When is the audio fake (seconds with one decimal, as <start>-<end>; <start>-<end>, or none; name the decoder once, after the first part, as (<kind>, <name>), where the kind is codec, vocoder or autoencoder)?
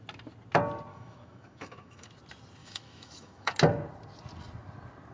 0.9-2.1 (autoencoder, DAC-VAE); 2.6-3.5